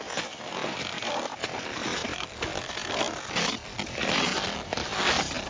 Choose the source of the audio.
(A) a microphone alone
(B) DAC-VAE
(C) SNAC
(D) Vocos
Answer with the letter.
A